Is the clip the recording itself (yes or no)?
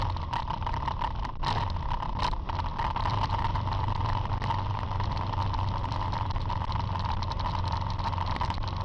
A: no